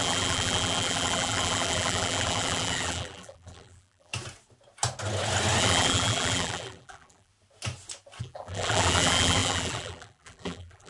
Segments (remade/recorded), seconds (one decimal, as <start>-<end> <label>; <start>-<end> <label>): 0.0-4.1 remade; 4.1-5.6 recorded; 5.6-7.3 remade; 7.3-8.2 recorded; 8.2-10.9 remade